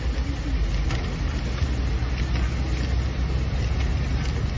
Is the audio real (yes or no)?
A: yes